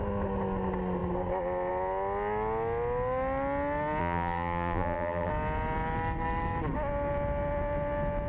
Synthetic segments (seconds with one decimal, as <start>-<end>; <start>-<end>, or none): 4.0-5.3